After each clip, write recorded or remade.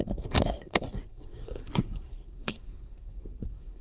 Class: remade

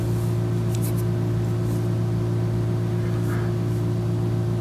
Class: recorded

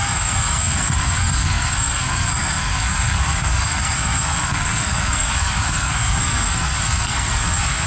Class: remade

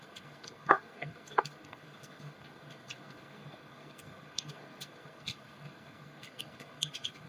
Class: remade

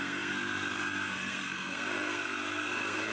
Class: remade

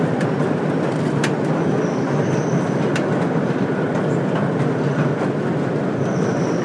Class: recorded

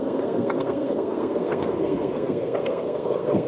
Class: remade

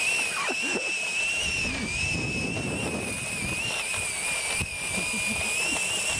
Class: recorded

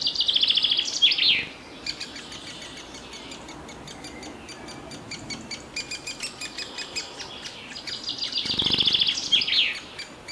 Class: recorded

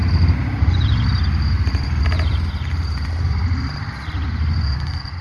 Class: recorded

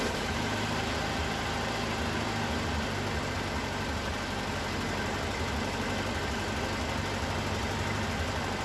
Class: recorded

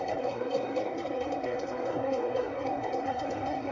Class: remade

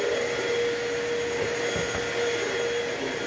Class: recorded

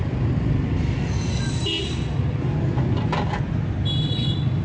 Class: recorded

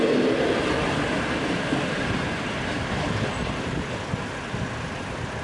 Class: recorded